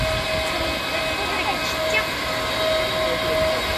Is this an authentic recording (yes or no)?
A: yes